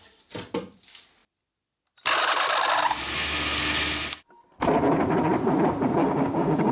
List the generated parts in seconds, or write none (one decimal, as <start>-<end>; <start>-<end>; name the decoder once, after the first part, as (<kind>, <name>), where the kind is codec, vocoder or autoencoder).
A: 6.0-6.7 (codec, DAC)